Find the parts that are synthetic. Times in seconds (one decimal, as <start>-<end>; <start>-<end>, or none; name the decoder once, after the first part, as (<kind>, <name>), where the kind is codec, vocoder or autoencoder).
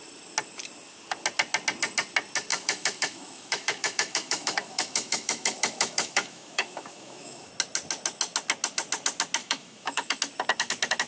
2.5-7.5 (autoencoder, DAC-VAE); 9.4-10.2